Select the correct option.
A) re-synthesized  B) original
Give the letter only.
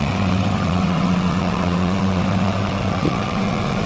A